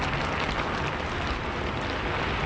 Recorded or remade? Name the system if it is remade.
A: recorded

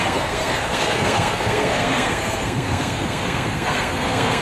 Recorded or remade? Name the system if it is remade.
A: remade, codec, SNAC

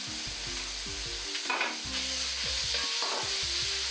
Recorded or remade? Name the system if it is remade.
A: recorded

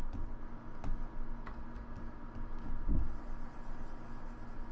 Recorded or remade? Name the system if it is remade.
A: recorded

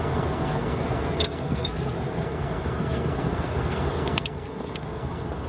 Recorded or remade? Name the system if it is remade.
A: remade, codec, SNAC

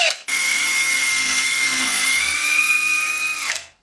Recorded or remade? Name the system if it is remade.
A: remade, codec, SNAC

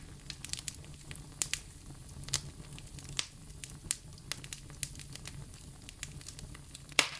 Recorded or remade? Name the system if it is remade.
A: recorded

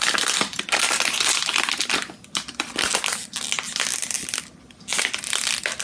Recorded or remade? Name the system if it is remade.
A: recorded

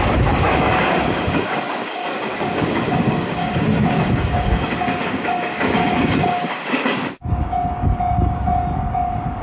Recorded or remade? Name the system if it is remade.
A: remade, codec, DAC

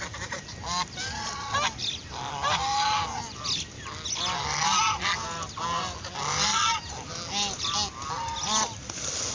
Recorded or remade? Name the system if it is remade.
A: recorded